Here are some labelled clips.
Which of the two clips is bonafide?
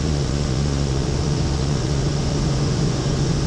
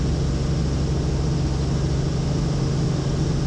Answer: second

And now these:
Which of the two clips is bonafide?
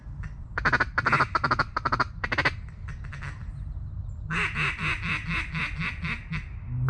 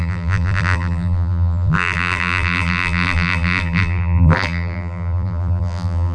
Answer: first